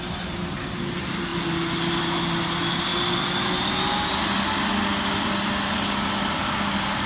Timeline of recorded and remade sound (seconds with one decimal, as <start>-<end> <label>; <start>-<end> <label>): 0.0-7.1 recorded

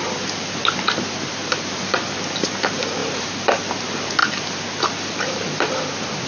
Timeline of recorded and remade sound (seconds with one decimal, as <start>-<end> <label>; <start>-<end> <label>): 0.0-6.3 recorded

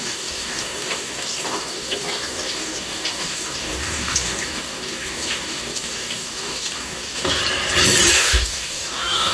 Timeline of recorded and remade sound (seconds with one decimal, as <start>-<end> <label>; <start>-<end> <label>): 0.0-7.4 remade; 7.4-8.1 recorded; 8.1-9.3 remade

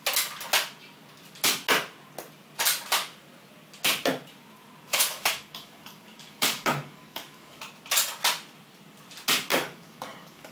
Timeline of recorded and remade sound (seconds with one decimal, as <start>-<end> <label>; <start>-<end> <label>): 0.0-4.9 recorded; 4.9-7.6 remade; 7.6-9.5 recorded; 9.5-10.5 remade

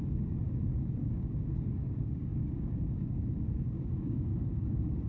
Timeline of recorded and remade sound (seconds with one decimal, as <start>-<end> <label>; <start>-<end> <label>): 0.0-5.1 remade

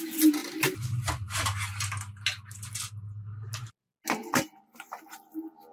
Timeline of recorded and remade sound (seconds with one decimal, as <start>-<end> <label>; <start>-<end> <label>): 0.0-5.7 recorded

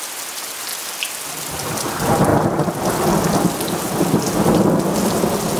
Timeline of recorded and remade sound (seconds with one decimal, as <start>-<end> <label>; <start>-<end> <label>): 0.0-5.6 recorded

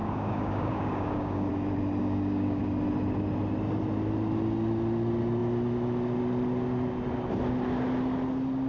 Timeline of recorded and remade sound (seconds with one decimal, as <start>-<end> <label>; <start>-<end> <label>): 0.0-1.5 remade; 1.5-2.0 recorded; 2.0-2.6 remade; 2.6-8.7 recorded